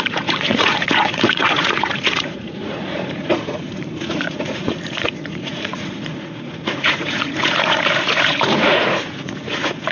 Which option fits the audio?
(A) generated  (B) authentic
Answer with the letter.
A